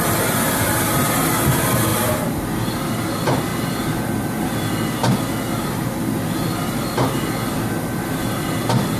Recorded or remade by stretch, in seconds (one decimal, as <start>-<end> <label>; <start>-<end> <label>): 0.0-1.9 recorded; 1.9-2.4 remade; 2.4-9.0 recorded